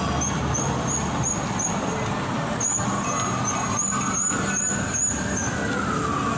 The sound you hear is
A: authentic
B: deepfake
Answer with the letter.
A